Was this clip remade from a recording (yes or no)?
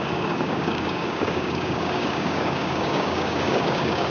yes